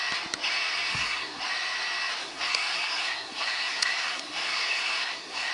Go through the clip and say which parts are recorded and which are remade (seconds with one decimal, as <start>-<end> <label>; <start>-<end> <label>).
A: 0.0-0.9 recorded; 0.9-1.4 remade; 1.4-2.2 recorded; 2.2-5.5 remade